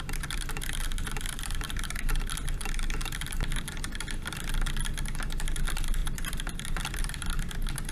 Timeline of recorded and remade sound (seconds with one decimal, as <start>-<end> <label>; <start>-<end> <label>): 0.0-6.0 recorded; 6.0-7.5 remade; 7.5-7.9 recorded